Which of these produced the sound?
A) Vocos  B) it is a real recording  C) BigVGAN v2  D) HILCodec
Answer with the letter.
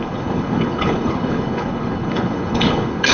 D